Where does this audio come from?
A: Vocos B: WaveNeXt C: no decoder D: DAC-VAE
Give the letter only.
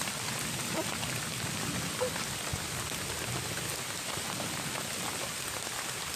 C